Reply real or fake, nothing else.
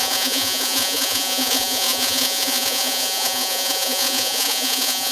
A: fake